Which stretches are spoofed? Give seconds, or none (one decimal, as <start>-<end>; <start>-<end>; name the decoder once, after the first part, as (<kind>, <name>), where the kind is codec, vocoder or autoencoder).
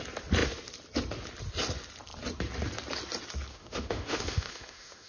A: 3.5-5.1 (autoencoder, DAC-VAE)